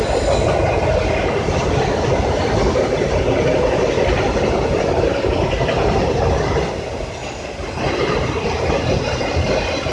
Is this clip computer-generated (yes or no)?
no